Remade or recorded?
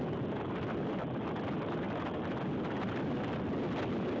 recorded